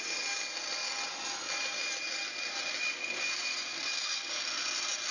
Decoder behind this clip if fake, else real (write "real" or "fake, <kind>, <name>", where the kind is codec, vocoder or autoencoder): real